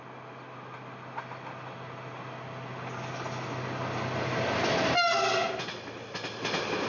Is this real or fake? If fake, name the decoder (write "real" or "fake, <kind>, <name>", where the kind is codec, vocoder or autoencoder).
real